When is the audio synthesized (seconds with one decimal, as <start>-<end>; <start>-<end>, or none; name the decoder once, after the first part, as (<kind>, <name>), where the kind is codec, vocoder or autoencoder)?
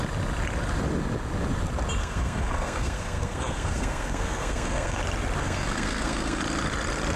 2.0-5.0 (codec, SNAC); 5.4-6.4